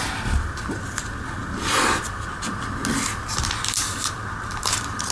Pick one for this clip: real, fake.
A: real